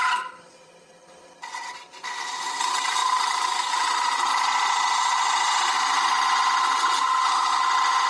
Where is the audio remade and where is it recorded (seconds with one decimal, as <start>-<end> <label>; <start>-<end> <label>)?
0.0-3.0 recorded; 3.0-4.3 remade; 4.3-8.1 recorded